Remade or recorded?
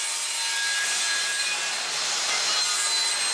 recorded